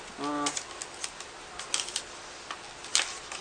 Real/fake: real